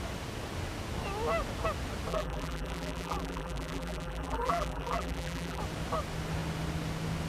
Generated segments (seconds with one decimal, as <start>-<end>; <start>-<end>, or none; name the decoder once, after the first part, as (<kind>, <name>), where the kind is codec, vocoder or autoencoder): 2.1-5.6 (vocoder, BigVGAN v2)